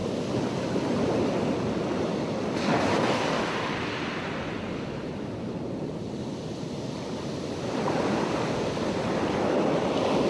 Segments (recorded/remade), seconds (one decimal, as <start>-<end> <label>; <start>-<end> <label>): 0.0-10.3 recorded